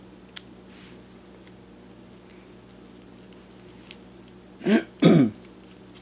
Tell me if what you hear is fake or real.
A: real